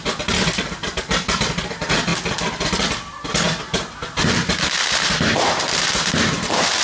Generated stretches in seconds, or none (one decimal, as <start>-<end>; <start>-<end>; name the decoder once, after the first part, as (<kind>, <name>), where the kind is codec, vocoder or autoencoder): 0.6-2.1 (vocoder, BigVGAN v2); 3.6-6.8